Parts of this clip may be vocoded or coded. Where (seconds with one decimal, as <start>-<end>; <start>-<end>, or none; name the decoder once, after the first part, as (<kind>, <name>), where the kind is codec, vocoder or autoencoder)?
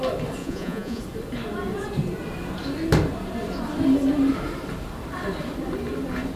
0.4-1.0 (vocoder, Vocos)